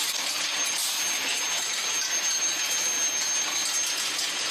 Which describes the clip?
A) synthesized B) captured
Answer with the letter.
B